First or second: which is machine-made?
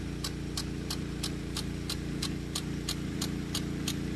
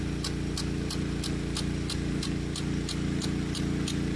first